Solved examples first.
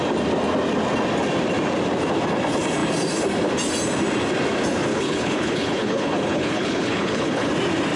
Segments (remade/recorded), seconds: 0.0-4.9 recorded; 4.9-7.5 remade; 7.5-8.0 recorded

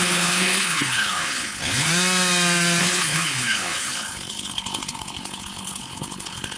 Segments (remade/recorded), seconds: 0.0-1.9 remade; 1.9-2.8 recorded; 2.8-6.6 remade